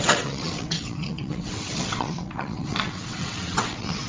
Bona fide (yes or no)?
no